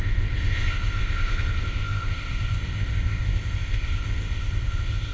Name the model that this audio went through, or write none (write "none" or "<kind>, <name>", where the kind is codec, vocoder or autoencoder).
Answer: codec, ZipCodec